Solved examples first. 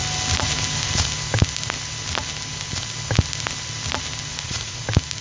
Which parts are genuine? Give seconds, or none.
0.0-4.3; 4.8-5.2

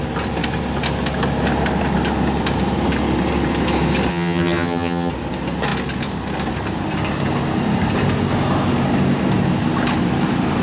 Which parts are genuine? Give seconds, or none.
0.0-4.1; 5.1-10.6

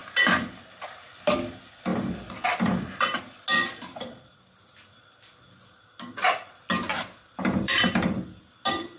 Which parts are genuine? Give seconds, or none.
0.0-1.9; 3.2-3.7; 4.4-6.9; 8.5-9.0

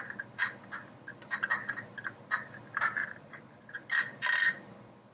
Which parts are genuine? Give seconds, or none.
0.0-3.0; 3.7-5.1

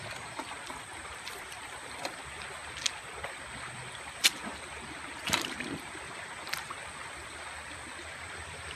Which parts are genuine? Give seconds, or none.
2.6-4.0; 4.4-5.9

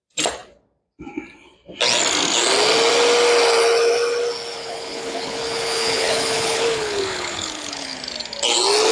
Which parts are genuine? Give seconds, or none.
0.0-4.5; 8.0-8.9

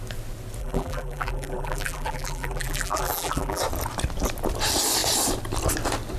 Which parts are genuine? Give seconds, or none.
0.0-0.6; 3.6-6.2

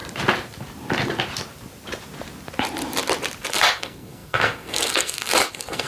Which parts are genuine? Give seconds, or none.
0.0-3.5